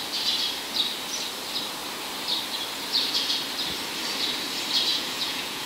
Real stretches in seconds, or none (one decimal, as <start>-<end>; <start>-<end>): 0.0-4.9